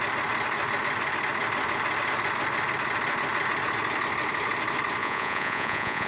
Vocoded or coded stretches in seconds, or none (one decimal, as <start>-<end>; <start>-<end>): 5.0-6.1